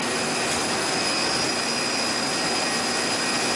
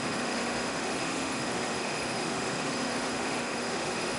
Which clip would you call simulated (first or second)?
second